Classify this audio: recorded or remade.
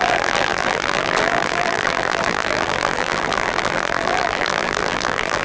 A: remade